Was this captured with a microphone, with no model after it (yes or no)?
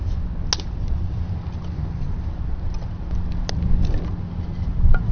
yes